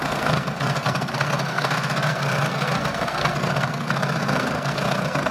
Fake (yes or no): yes